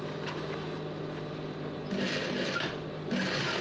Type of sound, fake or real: real